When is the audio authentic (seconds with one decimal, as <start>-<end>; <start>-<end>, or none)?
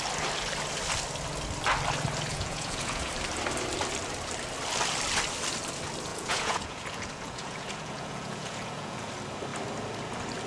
0.0-2.3; 3.1-6.1; 9.1-10.5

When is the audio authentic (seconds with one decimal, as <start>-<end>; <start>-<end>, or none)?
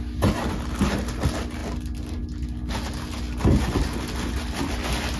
0.0-5.2